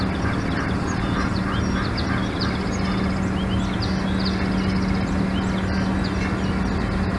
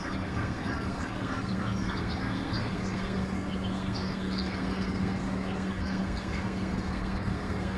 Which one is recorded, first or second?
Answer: first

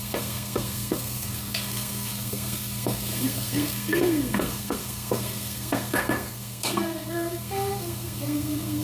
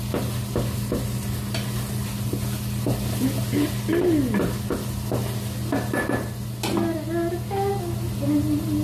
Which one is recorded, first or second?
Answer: second